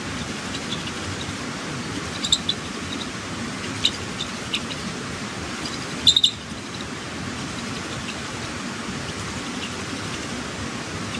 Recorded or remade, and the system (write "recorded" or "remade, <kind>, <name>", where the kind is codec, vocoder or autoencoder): recorded